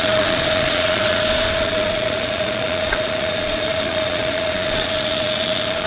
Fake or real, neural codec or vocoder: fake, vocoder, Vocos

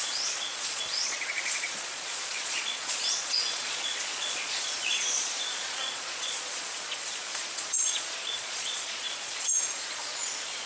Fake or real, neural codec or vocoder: fake, vocoder, Vocos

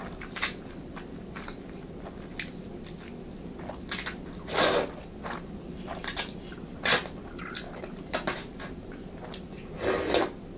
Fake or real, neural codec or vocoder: real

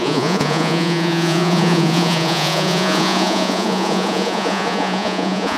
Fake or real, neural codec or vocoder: fake, vocoder, Vocos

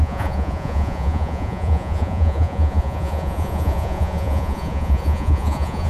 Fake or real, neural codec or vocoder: fake, vocoder, Vocos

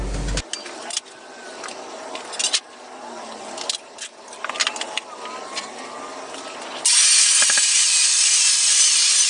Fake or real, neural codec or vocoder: real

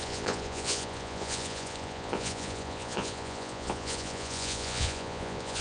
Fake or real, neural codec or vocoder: fake, vocoder, Vocos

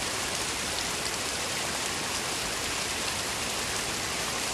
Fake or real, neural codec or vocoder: real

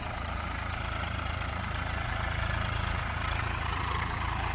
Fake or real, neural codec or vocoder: fake, vocoder, Vocos